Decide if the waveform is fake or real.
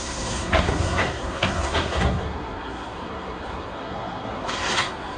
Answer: fake